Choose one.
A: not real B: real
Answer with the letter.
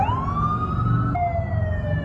B